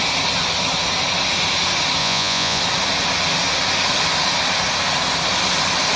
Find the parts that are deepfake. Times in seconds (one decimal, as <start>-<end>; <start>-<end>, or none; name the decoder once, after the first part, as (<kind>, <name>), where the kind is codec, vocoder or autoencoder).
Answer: 2.0-2.6 (vocoder, Vocos)